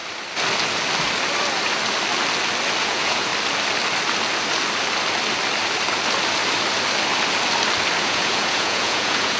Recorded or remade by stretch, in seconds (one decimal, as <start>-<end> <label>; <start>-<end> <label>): 0.0-2.8 recorded; 2.8-3.3 remade; 3.3-8.0 recorded; 8.0-9.4 remade